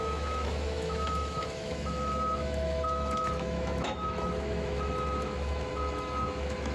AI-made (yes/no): yes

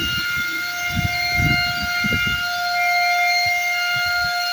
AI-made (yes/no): no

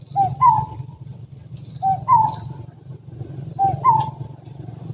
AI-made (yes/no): no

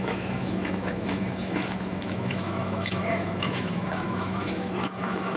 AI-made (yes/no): yes